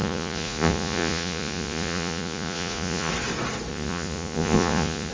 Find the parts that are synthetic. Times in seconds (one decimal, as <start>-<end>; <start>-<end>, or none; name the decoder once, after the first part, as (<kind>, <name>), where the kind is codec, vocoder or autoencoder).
0.0-3.1 (vocoder, Vocos); 3.7-5.1